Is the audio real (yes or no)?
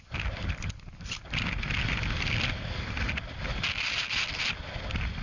yes